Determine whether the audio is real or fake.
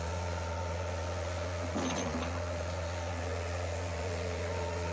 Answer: fake